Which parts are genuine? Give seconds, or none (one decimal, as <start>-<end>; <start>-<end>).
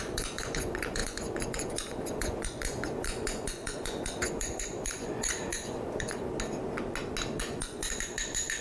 6.3-7.4